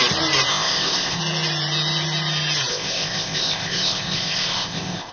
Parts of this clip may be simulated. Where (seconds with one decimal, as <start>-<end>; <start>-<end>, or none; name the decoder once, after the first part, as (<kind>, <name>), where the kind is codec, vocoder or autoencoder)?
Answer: 0.5-1.2 (codec, ZipCodec); 2.7-5.1